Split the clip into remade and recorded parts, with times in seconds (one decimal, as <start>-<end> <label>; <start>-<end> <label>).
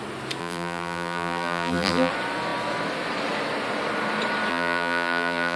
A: 0.0-0.4 recorded; 0.4-2.1 remade; 2.1-4.5 recorded; 4.5-5.6 remade